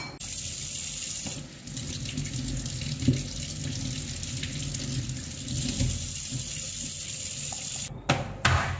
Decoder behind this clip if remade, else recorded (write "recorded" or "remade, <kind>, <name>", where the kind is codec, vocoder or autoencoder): recorded